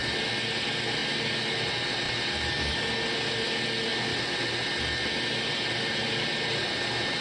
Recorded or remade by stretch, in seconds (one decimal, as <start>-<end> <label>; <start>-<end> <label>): 0.0-7.2 recorded

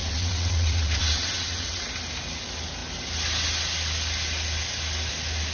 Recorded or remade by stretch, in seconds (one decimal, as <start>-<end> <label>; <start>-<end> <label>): 0.0-1.9 remade; 1.9-5.5 recorded

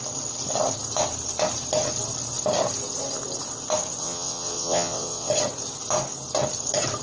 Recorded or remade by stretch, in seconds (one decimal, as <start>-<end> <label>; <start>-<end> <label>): 0.0-4.0 recorded; 4.0-5.3 remade; 5.3-7.0 recorded

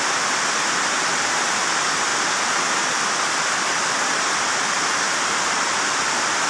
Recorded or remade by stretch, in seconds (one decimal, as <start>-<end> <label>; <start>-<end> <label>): 0.0-6.5 recorded

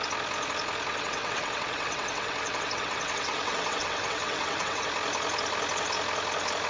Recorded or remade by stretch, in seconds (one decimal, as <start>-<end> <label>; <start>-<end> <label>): 0.0-0.9 recorded; 0.9-4.9 remade; 4.9-6.7 recorded

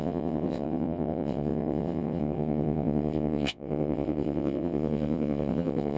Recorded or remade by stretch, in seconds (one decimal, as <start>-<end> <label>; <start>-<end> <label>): 0.0-6.0 remade

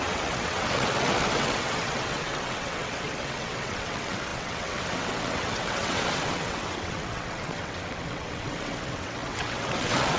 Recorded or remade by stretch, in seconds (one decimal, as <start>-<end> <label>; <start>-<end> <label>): 0.0-10.2 remade